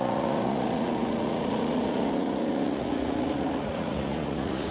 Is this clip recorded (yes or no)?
no